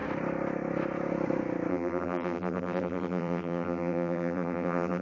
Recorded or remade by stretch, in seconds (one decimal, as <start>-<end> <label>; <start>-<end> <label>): 0.0-1.7 recorded; 1.7-5.0 remade